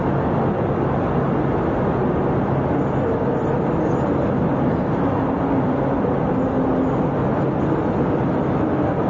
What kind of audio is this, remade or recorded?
recorded